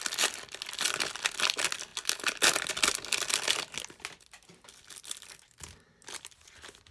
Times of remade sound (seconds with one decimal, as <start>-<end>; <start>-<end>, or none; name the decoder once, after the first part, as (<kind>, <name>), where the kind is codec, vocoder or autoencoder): none